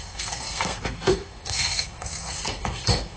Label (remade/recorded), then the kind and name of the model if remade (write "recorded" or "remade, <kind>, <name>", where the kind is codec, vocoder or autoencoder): remade, codec, SNAC